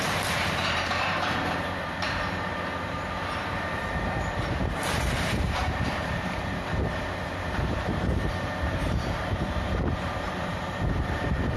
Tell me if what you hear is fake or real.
fake